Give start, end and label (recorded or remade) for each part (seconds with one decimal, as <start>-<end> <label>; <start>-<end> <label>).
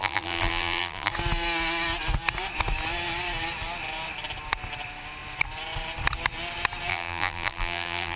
0.0-1.1 remade; 1.1-6.9 recorded; 6.9-8.2 remade